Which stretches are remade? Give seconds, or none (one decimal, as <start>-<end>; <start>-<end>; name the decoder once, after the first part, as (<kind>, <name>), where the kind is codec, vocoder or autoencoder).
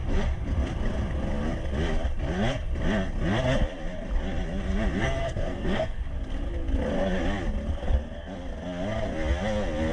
5.0-6.0 (codec, SNAC)